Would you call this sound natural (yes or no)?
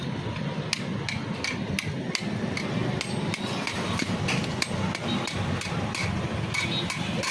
yes